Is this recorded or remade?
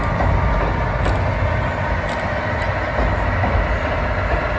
recorded